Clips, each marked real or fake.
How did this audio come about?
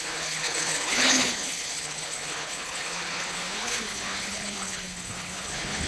fake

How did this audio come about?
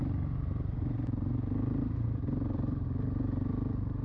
real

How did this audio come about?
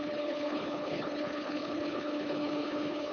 fake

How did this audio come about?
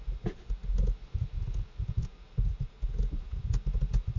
real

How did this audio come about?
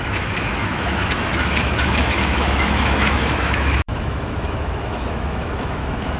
fake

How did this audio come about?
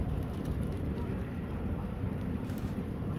fake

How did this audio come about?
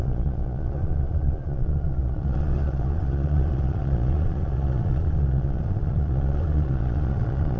fake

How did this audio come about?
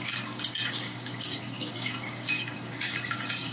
fake